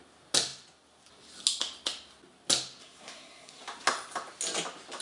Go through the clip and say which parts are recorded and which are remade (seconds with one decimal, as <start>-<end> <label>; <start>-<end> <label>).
0.0-2.8 recorded; 2.8-3.6 remade; 3.6-5.0 recorded